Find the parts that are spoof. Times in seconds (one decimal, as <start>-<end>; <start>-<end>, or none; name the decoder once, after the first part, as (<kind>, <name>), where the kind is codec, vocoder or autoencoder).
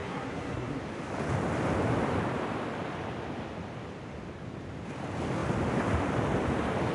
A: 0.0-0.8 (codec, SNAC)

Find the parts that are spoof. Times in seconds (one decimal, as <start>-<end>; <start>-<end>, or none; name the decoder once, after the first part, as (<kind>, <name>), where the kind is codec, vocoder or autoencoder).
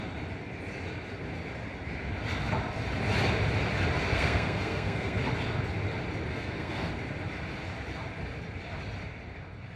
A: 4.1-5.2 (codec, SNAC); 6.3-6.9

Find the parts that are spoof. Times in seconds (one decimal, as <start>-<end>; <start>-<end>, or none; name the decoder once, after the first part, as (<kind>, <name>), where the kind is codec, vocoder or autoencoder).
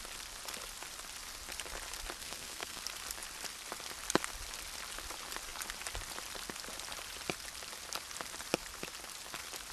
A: 2.2-2.8 (codec, SNAC)